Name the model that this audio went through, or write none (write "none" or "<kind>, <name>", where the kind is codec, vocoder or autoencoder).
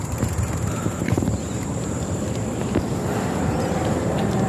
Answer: vocoder, BigVGAN v2